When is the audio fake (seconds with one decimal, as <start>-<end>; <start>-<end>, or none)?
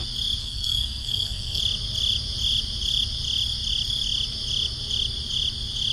0.4-1.6